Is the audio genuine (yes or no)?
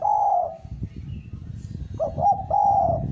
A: yes